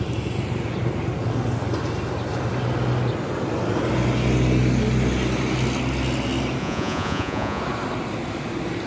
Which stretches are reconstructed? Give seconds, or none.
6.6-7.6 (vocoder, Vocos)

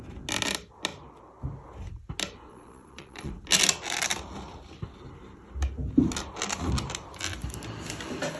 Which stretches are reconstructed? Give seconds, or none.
2.5-3.3 (vocoder, Vocos)

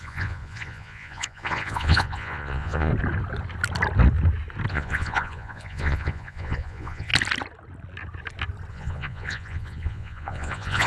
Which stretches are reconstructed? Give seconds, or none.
0.0-2.9 (vocoder, Vocos); 4.7-7.1; 8.7-10.9

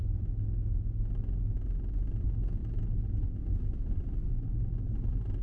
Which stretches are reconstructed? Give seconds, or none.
none

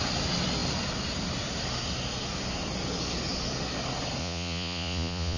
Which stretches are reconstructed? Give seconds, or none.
4.2-5.4 (vocoder, Vocos)

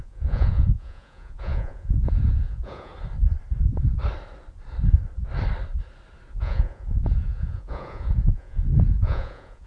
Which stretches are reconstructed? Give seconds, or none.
0.0-2.9 (vocoder, Vocos); 6.3-9.7

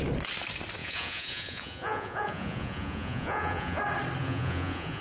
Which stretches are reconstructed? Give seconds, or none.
0.8-3.8 (vocoder, Vocos); 4.2-5.0